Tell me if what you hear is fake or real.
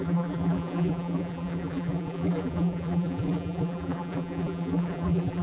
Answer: fake